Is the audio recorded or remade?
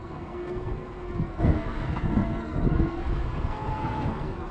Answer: remade